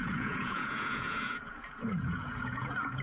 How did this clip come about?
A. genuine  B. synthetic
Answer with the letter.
B